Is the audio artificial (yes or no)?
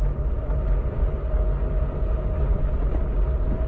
no